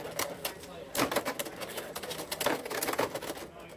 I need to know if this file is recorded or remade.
recorded